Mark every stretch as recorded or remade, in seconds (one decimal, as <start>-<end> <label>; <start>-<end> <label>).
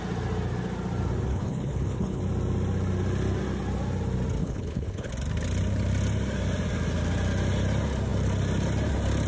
0.0-1.3 recorded; 1.3-2.2 remade; 2.2-4.4 recorded; 4.4-5.1 remade; 5.1-9.3 recorded